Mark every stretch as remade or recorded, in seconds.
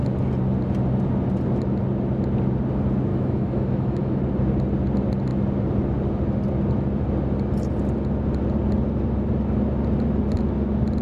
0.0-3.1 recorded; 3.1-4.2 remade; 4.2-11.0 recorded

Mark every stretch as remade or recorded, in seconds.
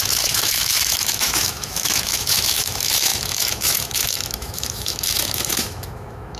0.0-6.4 remade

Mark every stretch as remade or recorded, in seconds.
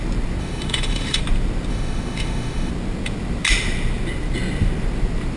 0.0-0.4 recorded; 0.4-1.2 remade; 1.2-1.7 recorded; 1.7-2.7 remade; 2.7-5.4 recorded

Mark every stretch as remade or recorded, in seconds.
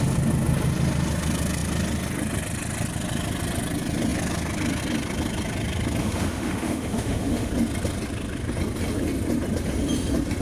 0.0-6.0 recorded; 6.0-7.5 remade; 7.5-10.4 recorded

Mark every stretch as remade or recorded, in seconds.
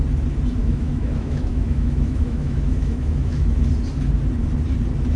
0.0-0.6 recorded; 0.6-3.7 remade; 3.7-5.2 recorded